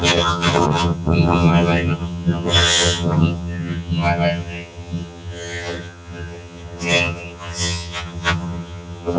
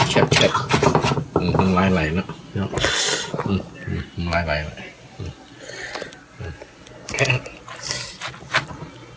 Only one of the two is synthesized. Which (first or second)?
first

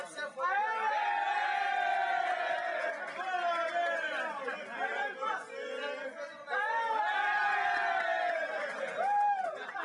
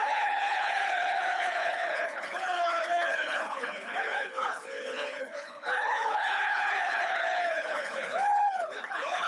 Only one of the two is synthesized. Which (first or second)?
second